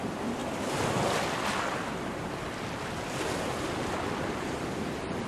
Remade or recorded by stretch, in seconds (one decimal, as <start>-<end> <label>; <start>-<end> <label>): 0.0-0.4 remade; 0.4-3.6 recorded; 3.6-5.3 remade